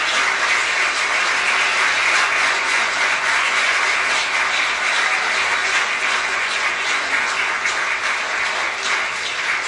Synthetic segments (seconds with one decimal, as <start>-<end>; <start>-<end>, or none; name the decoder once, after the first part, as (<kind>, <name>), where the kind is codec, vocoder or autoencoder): 2.0-3.8 (vocoder, Vocos); 5.6-7.7